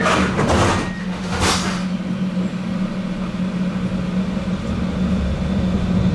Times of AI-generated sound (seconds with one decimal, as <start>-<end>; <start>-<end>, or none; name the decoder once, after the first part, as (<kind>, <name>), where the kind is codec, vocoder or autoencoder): 1.0-1.5 (autoencoder, DAC-VAE)